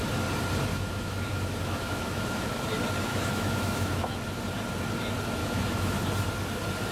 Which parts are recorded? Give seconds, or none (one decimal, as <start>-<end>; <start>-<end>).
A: 0.0-0.7; 2.6-3.1; 4.1-5.4; 6.0-6.9